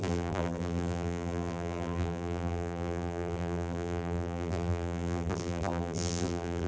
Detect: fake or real fake